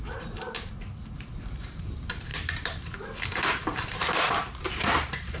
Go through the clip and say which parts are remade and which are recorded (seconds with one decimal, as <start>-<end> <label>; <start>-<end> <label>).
0.0-5.4 remade